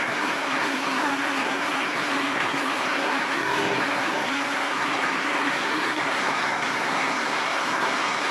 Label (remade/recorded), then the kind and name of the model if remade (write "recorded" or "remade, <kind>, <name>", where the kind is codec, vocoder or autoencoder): remade, codec, SNAC